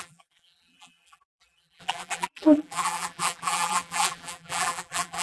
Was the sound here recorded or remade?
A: remade